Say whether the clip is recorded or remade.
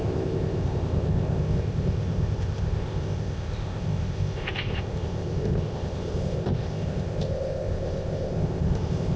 remade